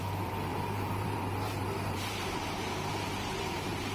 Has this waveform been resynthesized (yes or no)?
yes